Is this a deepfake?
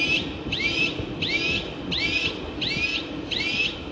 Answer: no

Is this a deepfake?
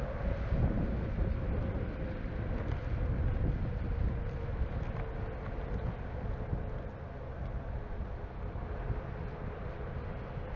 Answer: no